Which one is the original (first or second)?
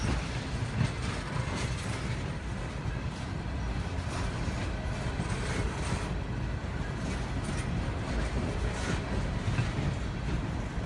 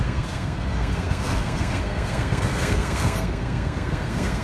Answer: first